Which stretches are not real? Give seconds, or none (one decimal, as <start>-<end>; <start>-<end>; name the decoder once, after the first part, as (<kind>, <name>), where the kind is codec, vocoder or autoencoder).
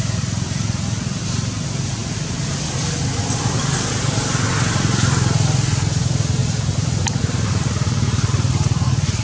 2.0-4.2 (vocoder, BigVGAN v2); 6.4-7.2